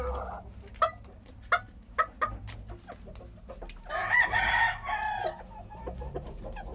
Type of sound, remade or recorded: recorded